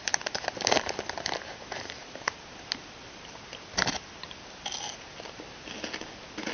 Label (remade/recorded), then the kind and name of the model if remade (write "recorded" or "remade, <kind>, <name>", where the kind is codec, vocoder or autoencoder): recorded